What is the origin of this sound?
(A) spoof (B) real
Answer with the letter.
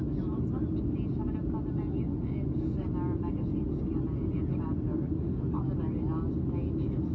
B